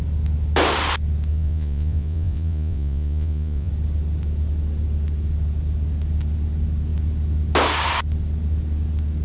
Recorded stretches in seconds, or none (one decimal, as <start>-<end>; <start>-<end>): 0.0-1.3; 3.7-9.2